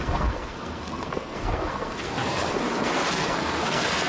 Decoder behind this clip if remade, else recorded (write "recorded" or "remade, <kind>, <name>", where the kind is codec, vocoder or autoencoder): remade, codec, SNAC